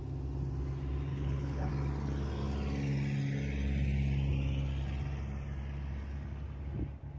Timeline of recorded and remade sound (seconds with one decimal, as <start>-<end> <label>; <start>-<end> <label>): 0.0-1.1 recorded; 1.1-1.7 remade; 1.7-7.2 recorded